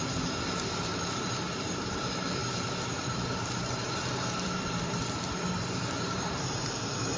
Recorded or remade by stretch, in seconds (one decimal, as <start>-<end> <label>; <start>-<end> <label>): 0.0-7.2 remade